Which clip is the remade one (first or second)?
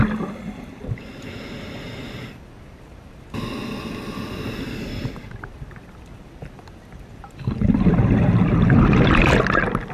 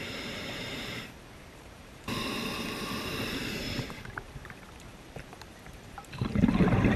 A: second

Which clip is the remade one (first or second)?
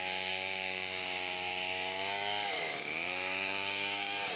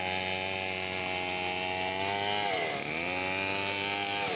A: first